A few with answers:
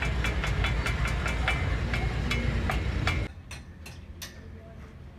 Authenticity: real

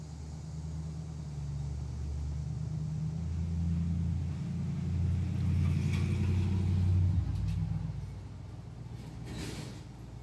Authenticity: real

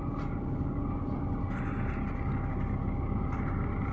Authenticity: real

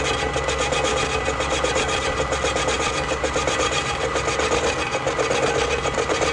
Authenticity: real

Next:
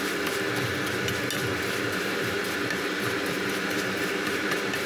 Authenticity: real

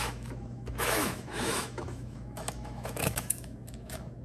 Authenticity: fake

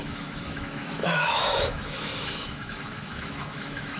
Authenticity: fake